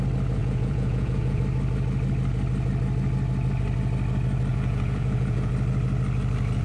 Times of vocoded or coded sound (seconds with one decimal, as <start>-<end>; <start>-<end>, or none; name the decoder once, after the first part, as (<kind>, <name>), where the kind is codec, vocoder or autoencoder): 0.4-1.4 (vocoder, Vocos); 4.5-5.5